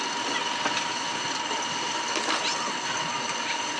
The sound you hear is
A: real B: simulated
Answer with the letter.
A